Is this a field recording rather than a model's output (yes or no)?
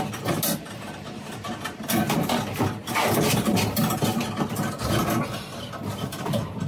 yes